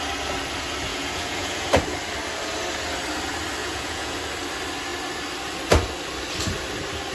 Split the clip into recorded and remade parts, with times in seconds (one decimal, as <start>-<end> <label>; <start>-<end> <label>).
0.0-0.9 recorded; 0.9-1.7 remade; 1.7-3.6 recorded; 3.6-4.2 remade; 4.2-7.1 recorded